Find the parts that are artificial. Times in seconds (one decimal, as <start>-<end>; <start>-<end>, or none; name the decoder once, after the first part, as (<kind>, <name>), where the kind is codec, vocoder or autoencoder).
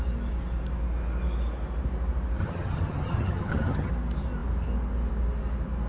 2.4-3.9 (vocoder, HiFi-GAN)